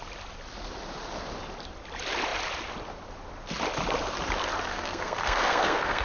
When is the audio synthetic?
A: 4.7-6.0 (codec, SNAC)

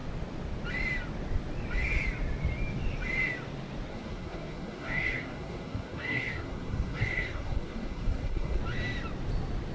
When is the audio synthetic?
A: 3.9-8.6 (codec, SNAC)